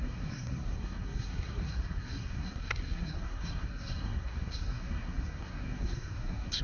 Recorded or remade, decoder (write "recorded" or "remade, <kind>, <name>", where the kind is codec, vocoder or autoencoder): remade, codec, SNAC